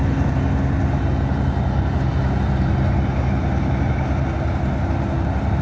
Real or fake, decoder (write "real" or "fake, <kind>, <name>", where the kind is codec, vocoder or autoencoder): real